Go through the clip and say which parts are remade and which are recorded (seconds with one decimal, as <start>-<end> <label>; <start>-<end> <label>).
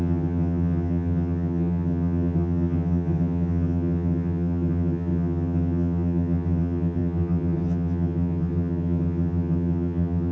0.0-10.3 remade